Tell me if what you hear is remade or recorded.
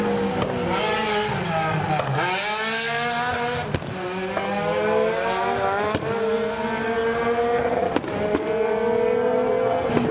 recorded